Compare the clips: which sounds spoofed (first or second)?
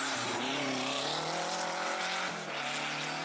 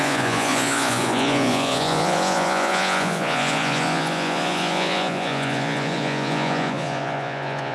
second